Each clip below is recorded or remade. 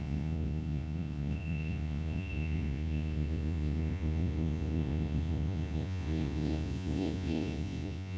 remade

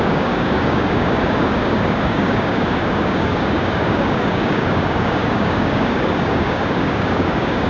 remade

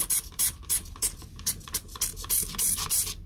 remade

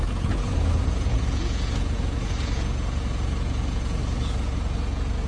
remade